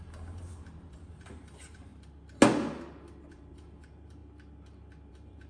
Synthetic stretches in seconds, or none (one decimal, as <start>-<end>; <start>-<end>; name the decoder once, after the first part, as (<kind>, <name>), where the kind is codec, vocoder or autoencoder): 0.0-1.9 (vocoder, BigVGAN v2); 3.3-4.2; 5.1-5.5

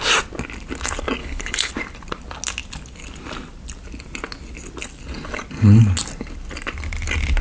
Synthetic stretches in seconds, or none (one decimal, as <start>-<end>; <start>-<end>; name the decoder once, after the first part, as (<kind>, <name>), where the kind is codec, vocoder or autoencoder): 1.2-1.7 (codec, HILCodec)

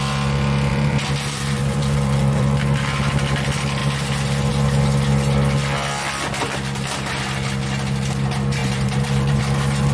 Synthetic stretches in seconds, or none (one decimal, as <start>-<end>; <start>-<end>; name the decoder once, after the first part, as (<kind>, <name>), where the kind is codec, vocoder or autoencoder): 0.7-3.1 (vocoder, BigVGAN v2); 8.6-9.4

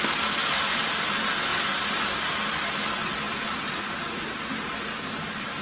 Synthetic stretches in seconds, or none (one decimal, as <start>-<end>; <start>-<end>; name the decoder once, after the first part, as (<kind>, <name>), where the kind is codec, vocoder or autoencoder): none

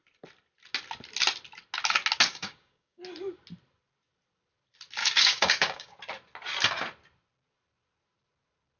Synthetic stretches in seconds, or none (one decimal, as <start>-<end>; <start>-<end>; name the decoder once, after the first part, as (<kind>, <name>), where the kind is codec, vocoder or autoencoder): 2.3-3.0 (codec, DAC); 5.0-6.0

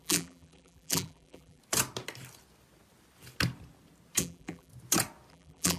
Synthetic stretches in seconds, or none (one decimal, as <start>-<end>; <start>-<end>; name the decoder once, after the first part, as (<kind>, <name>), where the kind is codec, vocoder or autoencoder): 0.0-1.6 (vocoder, BigVGAN v2); 4.2-4.7; 5.3-5.8

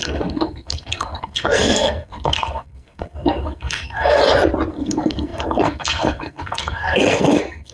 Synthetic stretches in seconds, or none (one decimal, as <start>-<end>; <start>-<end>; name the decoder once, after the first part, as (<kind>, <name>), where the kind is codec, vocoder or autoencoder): 0.0-4.2 (codec, SNAC); 4.7-7.7